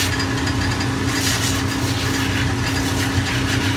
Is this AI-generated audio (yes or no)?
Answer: no